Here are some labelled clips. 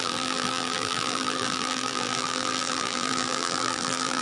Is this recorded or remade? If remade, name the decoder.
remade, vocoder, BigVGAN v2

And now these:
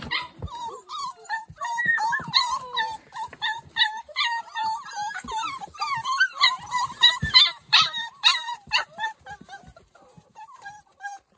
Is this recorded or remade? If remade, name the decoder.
remade, vocoder, BigVGAN v2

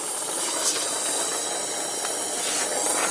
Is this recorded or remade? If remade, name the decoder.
recorded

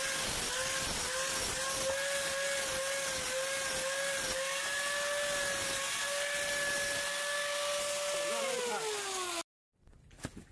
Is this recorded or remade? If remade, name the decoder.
recorded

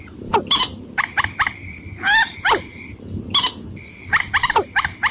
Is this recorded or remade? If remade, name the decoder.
recorded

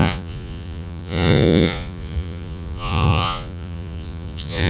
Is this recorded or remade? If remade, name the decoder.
remade, vocoder, Vocos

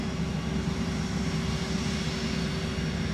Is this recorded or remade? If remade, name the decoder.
recorded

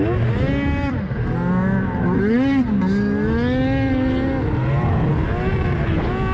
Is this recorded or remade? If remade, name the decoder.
recorded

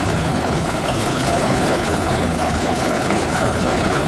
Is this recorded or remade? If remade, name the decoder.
remade, codec, HILCodec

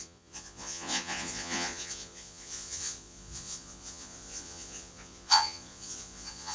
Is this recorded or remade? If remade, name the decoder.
remade, vocoder, Vocos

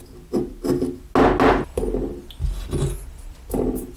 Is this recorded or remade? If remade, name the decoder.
recorded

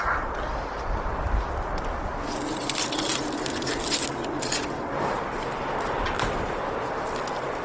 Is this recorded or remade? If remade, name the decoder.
recorded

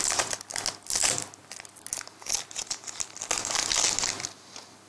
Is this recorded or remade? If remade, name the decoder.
recorded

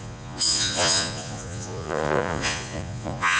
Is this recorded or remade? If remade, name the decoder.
remade, vocoder, Vocos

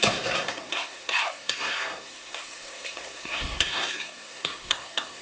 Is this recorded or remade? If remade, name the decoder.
remade, codec, SNAC